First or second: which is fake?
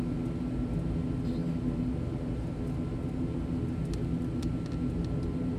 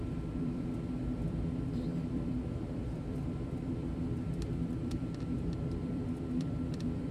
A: second